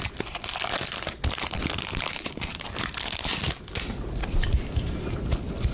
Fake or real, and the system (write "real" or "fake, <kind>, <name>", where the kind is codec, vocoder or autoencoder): real